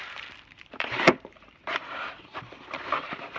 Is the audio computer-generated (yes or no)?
yes